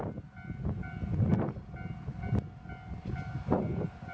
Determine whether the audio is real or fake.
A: real